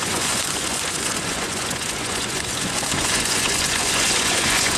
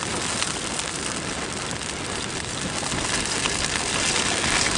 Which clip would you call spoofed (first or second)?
first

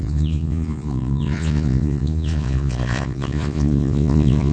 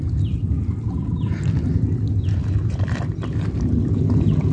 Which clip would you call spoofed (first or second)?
first